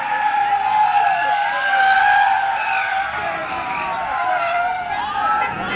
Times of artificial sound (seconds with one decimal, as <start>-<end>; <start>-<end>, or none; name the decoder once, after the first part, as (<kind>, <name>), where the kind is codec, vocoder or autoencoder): 5.2-5.8 (vocoder, Vocos)